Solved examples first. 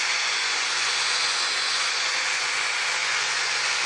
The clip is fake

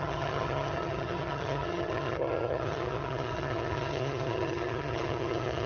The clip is fake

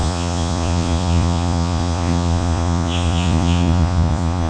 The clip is fake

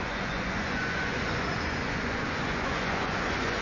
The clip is fake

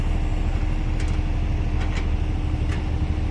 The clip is real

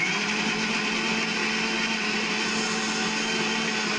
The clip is real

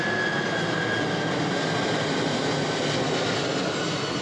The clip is real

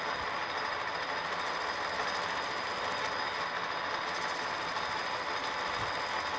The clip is real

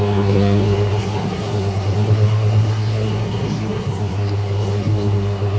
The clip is fake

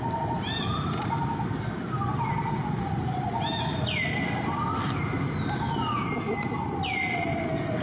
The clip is real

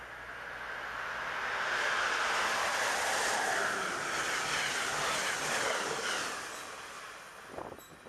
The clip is real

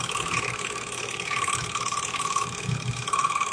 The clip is fake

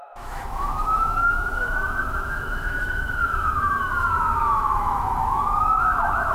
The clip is fake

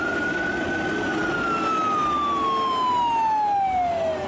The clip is real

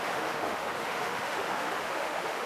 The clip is fake